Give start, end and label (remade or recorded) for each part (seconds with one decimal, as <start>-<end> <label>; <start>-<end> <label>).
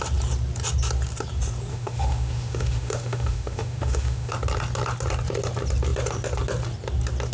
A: 0.0-1.7 recorded; 1.7-4.3 remade; 4.3-7.3 recorded